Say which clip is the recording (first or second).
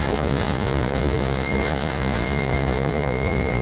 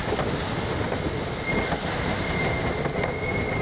second